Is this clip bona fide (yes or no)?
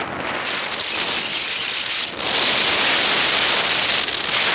yes